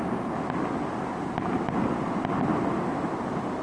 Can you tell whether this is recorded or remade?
recorded